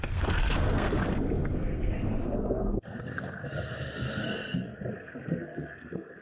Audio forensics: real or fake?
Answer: fake